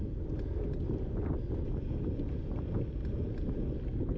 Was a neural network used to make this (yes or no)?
no